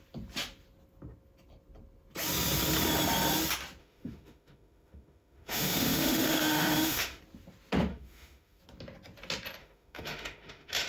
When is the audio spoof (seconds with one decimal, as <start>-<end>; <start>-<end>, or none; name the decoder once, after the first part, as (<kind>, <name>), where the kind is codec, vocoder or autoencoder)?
3.8-7.2 (autoencoder, DAC-VAE); 7.9-8.6; 9.6-10.9